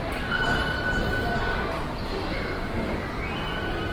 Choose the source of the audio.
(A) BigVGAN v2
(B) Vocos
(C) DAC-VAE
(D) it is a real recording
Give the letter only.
D